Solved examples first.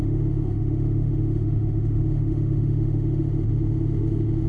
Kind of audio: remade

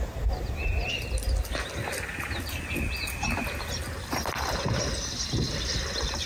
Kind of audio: recorded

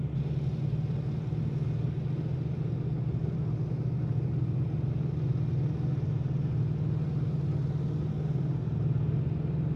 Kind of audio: recorded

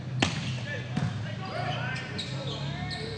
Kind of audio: recorded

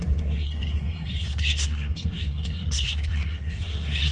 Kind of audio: remade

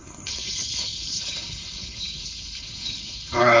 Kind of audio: remade